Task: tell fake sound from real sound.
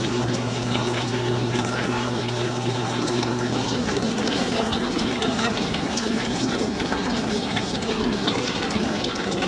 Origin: fake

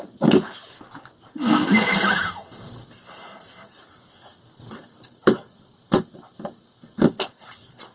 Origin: real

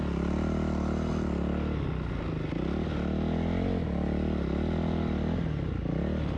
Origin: real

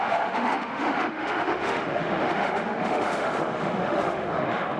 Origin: fake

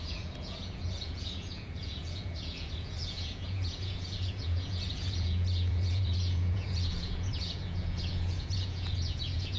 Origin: fake